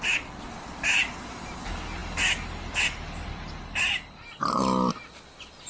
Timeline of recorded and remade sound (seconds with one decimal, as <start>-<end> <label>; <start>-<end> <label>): 0.0-5.7 recorded